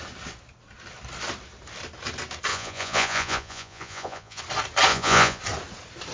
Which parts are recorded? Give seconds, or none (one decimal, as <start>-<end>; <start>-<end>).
0.0-2.5; 4.4-4.9; 5.4-6.1